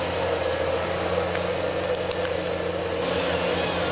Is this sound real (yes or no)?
yes